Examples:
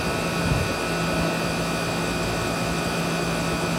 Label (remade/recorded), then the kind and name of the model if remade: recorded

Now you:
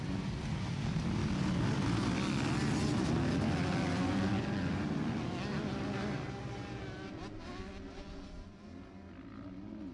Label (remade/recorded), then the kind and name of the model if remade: recorded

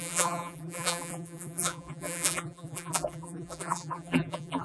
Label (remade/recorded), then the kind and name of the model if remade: remade, vocoder, BigVGAN v2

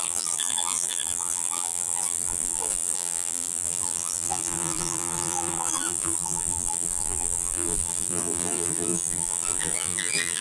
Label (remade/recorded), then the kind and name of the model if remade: remade, vocoder, BigVGAN v2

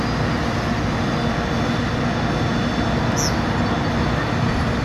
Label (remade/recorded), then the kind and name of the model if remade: recorded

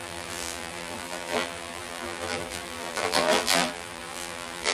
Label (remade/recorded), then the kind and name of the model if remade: remade, vocoder, BigVGAN v2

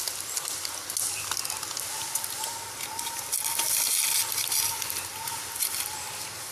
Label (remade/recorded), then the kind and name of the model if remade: recorded